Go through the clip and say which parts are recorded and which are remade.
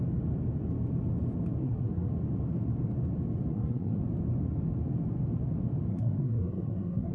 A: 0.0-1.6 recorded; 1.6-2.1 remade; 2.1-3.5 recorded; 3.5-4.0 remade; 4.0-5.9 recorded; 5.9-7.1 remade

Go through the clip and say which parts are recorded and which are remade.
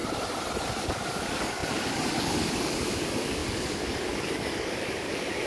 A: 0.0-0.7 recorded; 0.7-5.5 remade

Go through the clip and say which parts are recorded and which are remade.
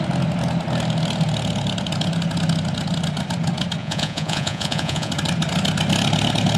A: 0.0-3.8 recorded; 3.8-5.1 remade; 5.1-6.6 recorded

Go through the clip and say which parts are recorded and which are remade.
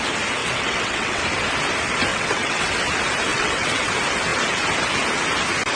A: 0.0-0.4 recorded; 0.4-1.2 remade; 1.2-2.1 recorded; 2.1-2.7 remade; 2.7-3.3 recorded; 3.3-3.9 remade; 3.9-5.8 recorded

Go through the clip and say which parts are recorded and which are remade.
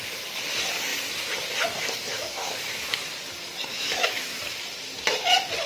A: 0.0-2.1 recorded; 2.1-3.0 remade; 3.0-3.7 recorded; 3.7-4.4 remade; 4.4-5.7 recorded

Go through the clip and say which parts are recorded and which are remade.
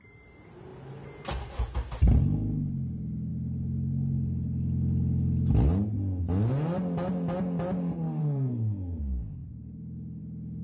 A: 0.0-8.2 recorded; 8.2-9.0 remade; 9.0-10.6 recorded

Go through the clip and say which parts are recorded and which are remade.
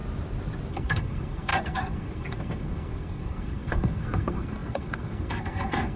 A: 0.0-0.7 recorded; 0.7-6.0 remade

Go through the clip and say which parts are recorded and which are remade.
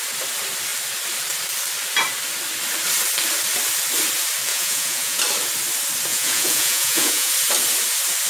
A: 0.0-4.5 recorded; 4.5-5.2 remade; 5.2-6.1 recorded; 6.1-7.3 remade; 7.3-8.3 recorded